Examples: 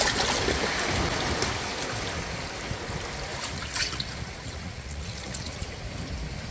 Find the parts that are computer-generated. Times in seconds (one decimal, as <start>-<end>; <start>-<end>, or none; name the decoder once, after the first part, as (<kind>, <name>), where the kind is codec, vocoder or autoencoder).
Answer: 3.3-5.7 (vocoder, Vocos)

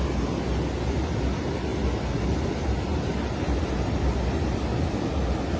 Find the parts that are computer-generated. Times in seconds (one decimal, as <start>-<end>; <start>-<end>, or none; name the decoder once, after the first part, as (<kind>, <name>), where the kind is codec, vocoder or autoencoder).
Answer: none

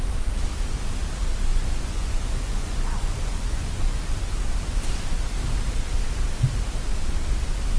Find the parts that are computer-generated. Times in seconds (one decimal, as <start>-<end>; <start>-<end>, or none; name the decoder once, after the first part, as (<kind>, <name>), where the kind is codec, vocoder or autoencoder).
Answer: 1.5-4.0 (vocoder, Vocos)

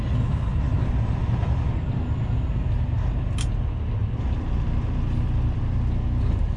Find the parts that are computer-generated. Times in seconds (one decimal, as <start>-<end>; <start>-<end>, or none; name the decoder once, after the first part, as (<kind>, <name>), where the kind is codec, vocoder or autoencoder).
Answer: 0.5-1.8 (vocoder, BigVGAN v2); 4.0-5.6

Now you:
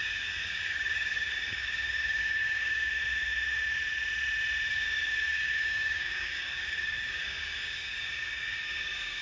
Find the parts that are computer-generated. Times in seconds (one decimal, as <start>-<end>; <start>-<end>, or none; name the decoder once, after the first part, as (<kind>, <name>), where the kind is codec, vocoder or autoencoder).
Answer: 0.0-2.9 (codec, DAC); 4.7-9.2